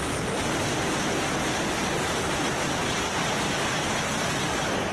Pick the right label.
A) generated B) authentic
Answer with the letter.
B